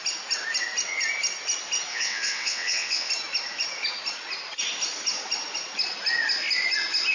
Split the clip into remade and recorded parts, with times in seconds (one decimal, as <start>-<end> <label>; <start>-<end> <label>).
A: 0.0-1.9 recorded; 1.9-3.1 remade; 3.1-7.1 recorded